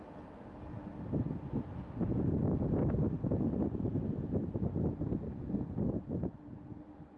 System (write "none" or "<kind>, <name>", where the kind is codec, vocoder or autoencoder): none